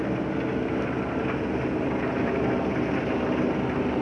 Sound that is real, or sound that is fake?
real